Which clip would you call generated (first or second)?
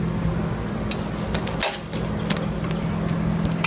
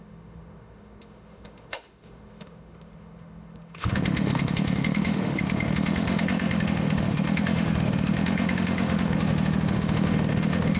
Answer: second